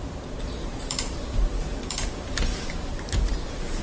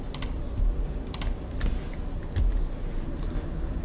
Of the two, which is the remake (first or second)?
first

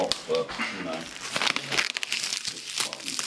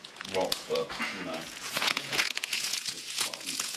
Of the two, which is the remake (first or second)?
second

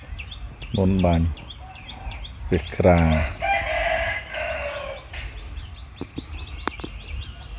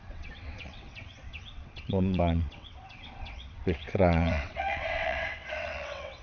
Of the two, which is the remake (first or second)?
second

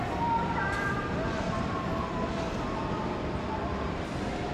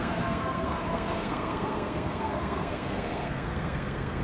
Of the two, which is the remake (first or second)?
second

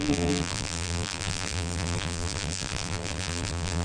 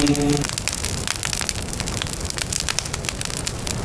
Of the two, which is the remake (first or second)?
first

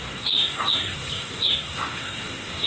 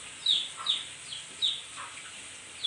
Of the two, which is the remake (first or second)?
first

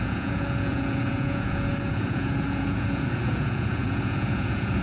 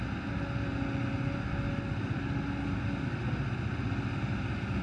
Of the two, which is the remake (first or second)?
first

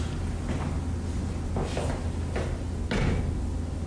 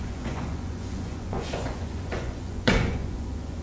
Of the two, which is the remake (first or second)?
second